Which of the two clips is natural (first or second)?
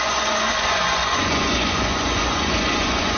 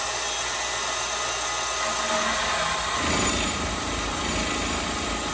second